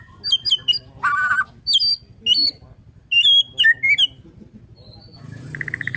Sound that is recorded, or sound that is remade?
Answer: recorded